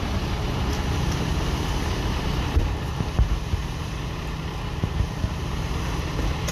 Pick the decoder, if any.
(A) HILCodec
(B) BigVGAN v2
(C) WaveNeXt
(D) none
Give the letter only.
B